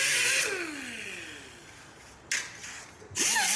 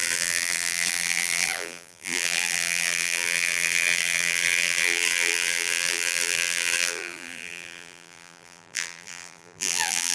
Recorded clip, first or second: first